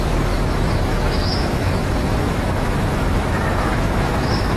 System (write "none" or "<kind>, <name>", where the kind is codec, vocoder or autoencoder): autoencoder, DAC-VAE